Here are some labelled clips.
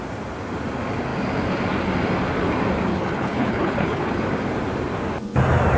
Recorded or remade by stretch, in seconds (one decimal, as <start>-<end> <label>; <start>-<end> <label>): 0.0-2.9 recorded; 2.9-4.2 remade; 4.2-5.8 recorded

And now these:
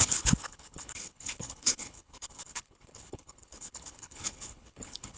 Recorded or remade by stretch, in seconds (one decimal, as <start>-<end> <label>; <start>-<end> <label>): 0.0-5.2 remade

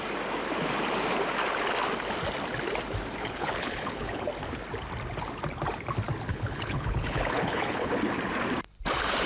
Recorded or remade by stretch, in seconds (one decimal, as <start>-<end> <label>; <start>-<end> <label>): 0.0-3.2 recorded; 3.2-4.3 remade; 4.3-6.3 recorded; 6.3-7.9 remade; 7.9-9.3 recorded

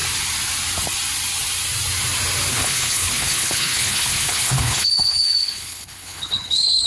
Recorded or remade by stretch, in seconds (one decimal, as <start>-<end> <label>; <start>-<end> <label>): 0.0-2.5 recorded; 2.5-6.9 remade